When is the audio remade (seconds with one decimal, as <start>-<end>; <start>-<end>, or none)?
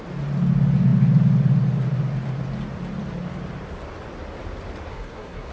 4.9-5.5